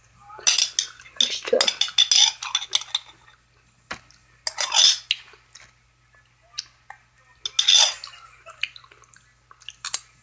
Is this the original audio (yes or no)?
yes